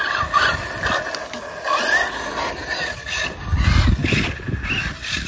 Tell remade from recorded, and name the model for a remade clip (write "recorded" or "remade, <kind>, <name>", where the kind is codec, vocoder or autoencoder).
recorded